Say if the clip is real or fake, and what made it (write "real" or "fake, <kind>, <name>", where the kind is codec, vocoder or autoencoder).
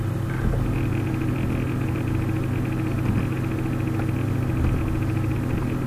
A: real